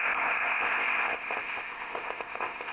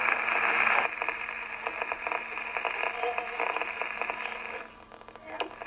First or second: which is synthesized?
first